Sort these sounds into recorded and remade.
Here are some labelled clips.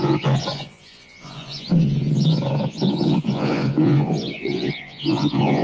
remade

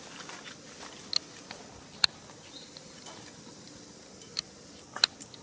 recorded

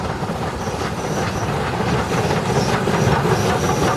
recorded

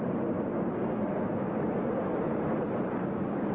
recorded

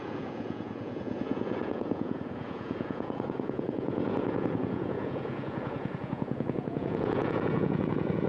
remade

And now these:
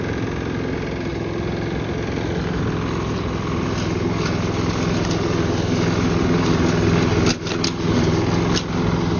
recorded